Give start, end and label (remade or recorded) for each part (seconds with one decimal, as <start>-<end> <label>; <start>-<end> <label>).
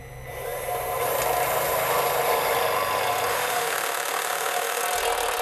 0.0-3.3 recorded; 3.3-4.8 remade; 4.8-5.4 recorded